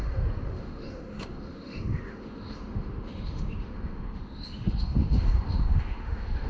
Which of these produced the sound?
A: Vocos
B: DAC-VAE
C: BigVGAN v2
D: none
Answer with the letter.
B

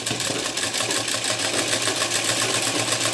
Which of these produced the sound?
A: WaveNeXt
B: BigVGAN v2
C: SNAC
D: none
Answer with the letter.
D